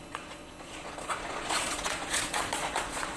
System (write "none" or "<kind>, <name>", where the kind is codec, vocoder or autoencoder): vocoder, Vocos